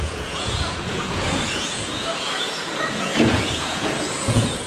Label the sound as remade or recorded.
remade